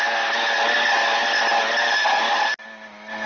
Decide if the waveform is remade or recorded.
recorded